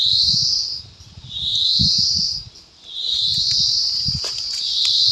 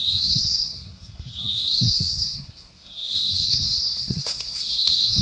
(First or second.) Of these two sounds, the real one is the first